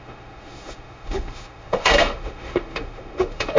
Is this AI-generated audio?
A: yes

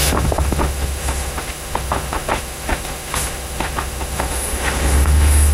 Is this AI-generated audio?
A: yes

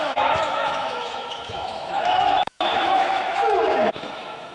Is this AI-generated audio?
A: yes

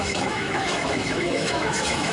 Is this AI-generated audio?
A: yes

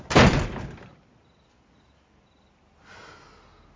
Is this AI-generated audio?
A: no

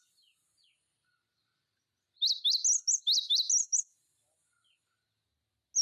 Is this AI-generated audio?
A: no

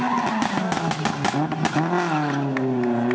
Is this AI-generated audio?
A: no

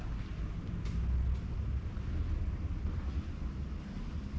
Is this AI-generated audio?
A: no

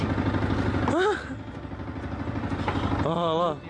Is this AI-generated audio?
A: no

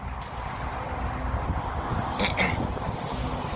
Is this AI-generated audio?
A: no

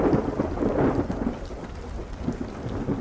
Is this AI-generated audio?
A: no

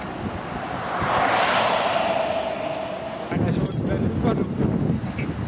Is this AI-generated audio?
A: no